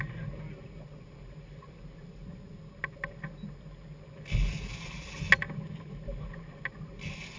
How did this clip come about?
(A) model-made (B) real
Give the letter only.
B